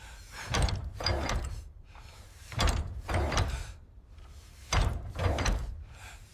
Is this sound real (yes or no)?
no